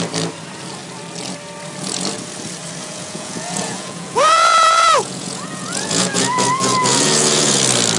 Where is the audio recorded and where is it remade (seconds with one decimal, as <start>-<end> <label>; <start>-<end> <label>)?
0.0-2.8 recorded; 2.8-7.6 remade; 7.6-8.0 recorded